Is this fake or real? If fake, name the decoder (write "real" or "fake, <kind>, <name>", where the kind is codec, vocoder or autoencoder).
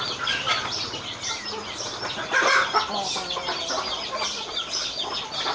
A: real